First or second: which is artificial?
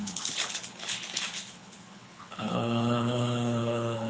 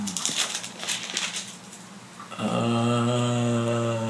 first